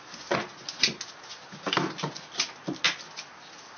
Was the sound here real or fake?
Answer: real